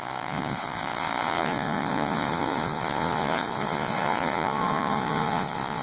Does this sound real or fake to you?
fake